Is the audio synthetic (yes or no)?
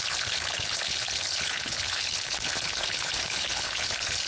yes